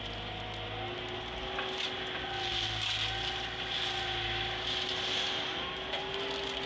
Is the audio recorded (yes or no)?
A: yes